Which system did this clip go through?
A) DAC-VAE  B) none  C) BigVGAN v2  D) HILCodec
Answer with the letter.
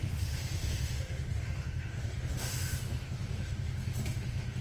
A